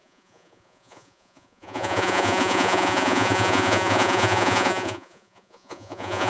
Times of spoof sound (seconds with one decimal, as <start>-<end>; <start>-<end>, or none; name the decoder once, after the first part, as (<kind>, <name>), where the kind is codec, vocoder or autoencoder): 0.0-6.3 (vocoder, Vocos)